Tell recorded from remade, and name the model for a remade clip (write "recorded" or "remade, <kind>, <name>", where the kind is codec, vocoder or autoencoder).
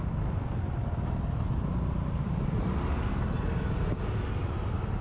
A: recorded